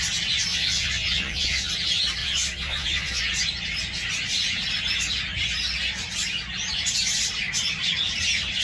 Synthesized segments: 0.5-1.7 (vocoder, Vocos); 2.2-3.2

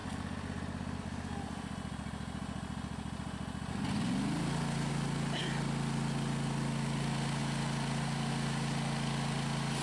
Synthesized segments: none

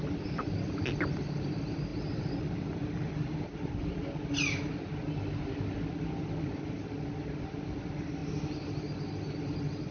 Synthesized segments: none